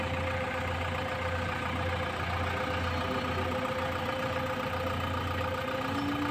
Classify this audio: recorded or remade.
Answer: recorded